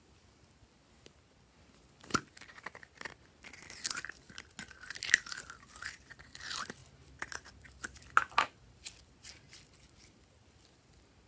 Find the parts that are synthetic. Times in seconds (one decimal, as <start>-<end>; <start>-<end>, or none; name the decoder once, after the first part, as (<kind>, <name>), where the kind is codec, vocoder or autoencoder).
none